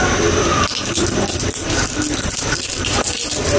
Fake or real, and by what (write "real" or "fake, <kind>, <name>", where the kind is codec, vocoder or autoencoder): real